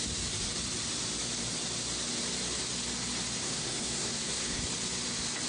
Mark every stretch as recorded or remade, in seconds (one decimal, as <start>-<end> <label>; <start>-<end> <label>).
0.0-3.4 recorded; 3.4-4.6 remade; 4.6-5.5 recorded